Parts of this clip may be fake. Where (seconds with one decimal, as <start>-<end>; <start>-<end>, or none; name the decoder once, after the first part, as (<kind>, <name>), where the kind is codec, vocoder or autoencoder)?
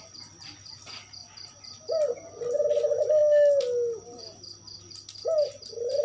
none